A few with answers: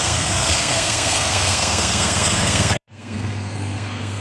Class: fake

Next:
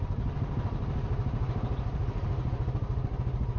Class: real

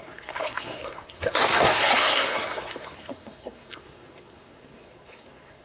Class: fake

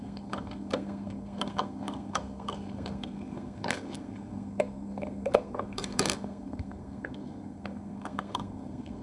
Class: fake